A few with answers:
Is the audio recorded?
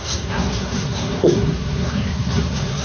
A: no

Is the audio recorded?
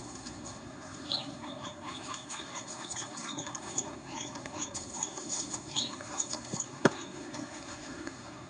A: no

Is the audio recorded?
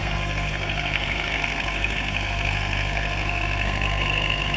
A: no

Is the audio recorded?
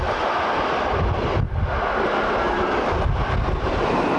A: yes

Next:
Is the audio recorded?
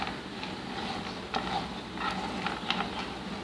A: yes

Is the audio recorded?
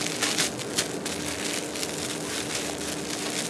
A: yes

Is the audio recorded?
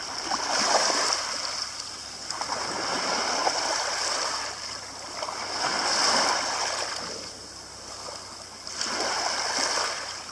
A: yes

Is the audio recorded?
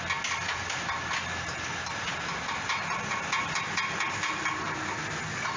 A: yes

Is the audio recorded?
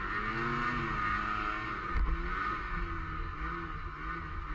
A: yes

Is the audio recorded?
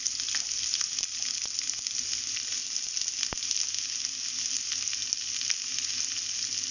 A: yes